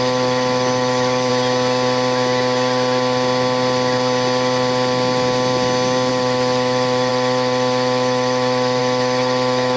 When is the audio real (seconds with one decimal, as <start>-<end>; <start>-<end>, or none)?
1.3-6.1